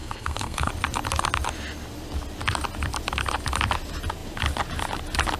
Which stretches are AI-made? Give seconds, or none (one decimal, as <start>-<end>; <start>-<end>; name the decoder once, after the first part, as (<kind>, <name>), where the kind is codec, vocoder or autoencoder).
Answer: 0.0-0.7 (codec, SNAC)